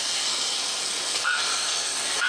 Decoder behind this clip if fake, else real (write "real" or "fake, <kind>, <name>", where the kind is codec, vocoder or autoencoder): fake, codec, SNAC